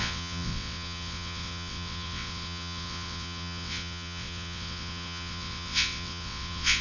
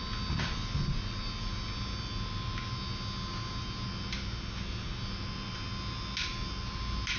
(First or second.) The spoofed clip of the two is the first